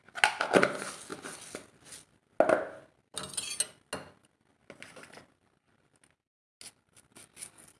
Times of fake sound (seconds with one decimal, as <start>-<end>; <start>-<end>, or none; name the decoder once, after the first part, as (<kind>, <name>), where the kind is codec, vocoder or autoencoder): none